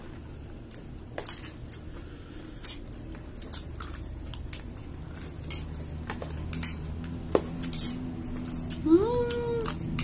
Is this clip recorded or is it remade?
recorded